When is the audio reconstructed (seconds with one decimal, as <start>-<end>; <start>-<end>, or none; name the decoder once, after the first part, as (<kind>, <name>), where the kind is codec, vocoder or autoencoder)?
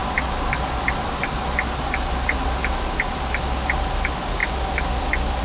none